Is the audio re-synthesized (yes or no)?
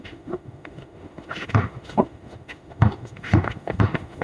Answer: yes